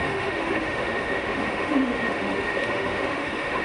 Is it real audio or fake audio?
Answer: fake